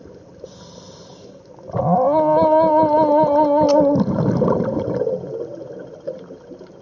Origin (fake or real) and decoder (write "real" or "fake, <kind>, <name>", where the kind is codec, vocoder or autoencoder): real